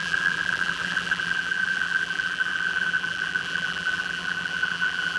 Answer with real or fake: fake